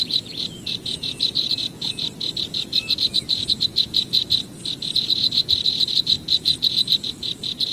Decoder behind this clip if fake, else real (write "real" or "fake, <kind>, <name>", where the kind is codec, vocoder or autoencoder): fake, vocoder, Vocos